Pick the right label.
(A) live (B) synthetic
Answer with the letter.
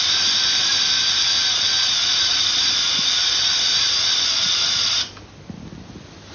A